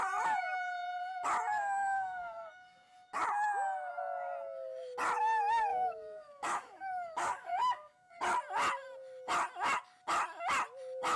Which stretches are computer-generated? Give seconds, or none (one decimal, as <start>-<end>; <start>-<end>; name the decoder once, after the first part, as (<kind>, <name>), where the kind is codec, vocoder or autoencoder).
1.5-3.2 (codec, DAC); 5.7-8.2